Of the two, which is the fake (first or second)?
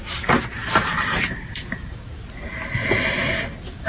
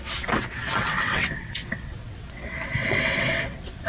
second